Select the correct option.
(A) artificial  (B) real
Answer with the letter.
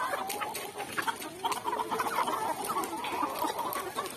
B